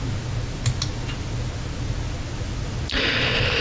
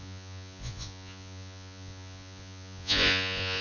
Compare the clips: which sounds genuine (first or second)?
first